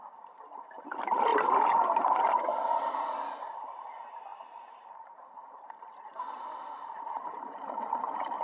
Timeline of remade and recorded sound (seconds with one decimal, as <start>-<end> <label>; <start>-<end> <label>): 0.0-1.3 remade; 1.3-3.4 recorded; 3.4-8.4 remade